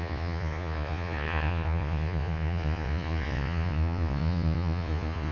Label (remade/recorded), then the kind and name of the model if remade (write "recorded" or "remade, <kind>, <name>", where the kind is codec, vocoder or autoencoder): remade, vocoder, Vocos